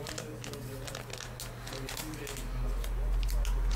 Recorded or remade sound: recorded